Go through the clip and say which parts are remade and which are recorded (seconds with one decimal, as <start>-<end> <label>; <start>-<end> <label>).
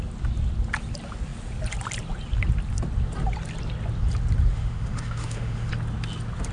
0.0-4.5 recorded; 4.5-5.7 remade; 5.7-6.5 recorded